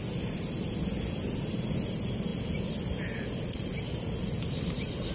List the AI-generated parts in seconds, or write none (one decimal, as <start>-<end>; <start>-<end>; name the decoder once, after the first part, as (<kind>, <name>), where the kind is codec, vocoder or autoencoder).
none